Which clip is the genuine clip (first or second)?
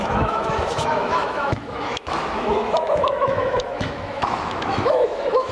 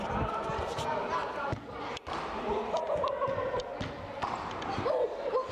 second